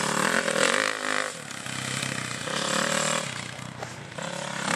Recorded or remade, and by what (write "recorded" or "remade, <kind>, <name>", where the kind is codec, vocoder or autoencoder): recorded